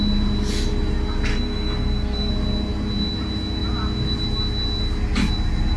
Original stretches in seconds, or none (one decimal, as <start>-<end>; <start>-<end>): 0.0-1.3; 2.3-5.8